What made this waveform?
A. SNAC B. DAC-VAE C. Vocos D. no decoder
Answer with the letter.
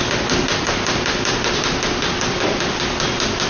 D